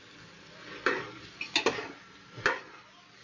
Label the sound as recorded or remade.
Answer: recorded